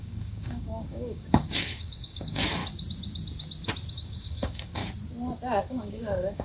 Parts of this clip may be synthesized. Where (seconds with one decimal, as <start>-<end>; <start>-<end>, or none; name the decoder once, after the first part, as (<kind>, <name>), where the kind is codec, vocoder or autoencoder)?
0.0-2.6 (codec, DAC); 3.9-4.8; 5.7-6.4

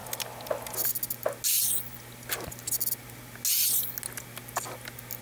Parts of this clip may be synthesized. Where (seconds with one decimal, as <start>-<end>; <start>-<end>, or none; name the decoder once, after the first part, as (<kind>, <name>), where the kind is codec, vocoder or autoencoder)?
none

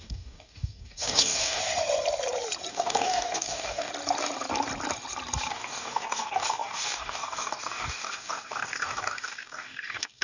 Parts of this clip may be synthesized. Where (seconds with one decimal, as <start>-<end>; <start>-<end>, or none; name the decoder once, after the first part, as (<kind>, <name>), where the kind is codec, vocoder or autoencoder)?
0.0-1.6 (codec, DAC); 2.7-3.9; 5.5-10.2

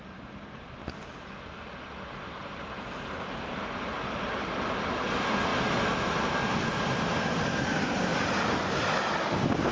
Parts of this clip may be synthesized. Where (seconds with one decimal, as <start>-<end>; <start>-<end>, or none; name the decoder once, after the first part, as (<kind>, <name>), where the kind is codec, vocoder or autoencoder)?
none